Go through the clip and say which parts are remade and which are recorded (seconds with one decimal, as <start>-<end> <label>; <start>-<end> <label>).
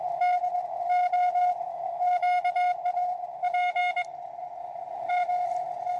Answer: 0.0-4.6 recorded; 4.6-5.1 remade; 5.1-6.0 recorded